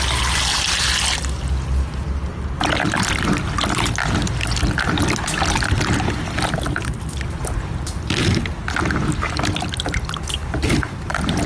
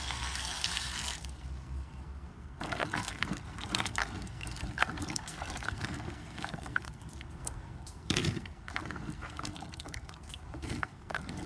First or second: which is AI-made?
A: second